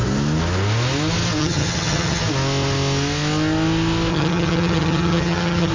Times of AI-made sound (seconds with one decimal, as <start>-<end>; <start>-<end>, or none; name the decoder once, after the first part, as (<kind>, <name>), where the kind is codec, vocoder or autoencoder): 1.4-2.2 (vocoder, HiFi-GAN); 4.1-5.7